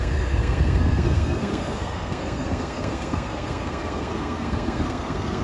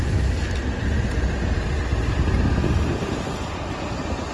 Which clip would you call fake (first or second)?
first